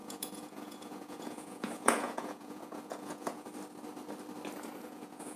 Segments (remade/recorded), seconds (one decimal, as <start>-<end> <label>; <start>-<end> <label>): 0.0-3.5 remade; 3.5-4.8 recorded; 4.8-5.4 remade